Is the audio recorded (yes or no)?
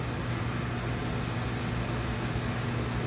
yes